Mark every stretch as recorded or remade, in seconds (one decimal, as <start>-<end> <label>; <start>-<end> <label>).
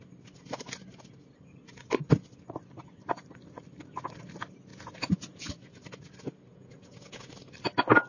0.0-4.7 recorded; 4.7-5.5 remade; 5.5-6.5 recorded; 6.5-7.3 remade; 7.3-8.1 recorded